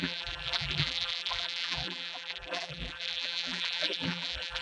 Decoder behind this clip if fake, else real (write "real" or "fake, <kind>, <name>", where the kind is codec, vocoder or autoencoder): fake, vocoder, BigVGAN v2